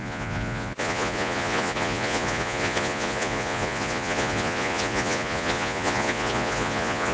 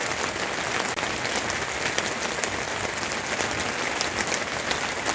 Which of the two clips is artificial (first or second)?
first